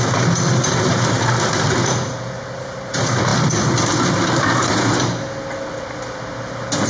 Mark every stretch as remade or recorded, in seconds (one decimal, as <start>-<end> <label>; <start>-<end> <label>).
0.0-6.9 recorded